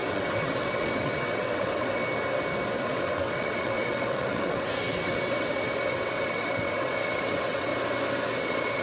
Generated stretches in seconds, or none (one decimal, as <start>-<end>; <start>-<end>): 0.0-2.0; 2.8-7.7; 8.3-8.8